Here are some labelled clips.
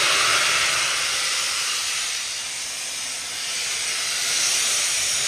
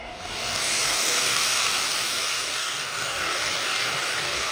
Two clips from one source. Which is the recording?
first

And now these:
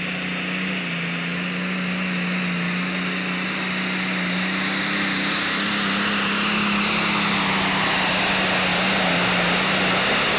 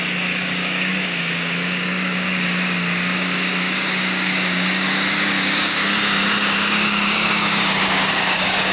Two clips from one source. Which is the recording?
first